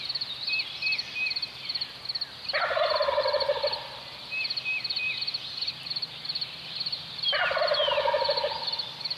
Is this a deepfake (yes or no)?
no